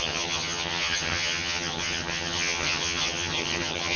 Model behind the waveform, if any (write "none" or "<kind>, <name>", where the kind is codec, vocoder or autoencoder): vocoder, HiFi-GAN